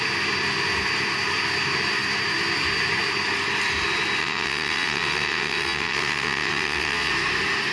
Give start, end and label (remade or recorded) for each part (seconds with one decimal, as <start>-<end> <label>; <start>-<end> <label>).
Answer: 0.0-4.2 recorded; 4.2-7.1 remade; 7.1-7.7 recorded